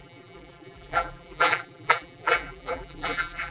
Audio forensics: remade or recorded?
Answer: remade